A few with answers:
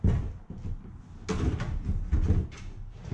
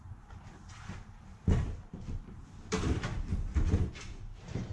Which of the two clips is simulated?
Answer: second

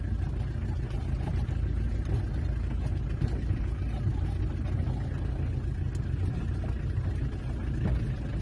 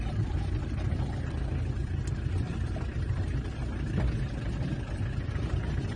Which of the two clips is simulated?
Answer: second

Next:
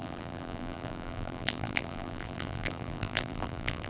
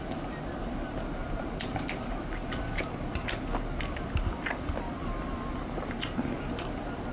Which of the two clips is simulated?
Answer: first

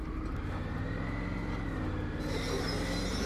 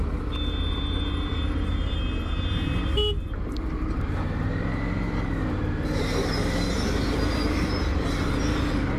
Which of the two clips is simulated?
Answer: second